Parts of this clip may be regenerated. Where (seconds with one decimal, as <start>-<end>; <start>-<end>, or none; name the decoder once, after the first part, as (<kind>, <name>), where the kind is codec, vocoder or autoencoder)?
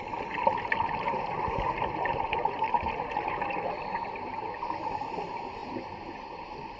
1.1-4.9 (vocoder, BigVGAN v2)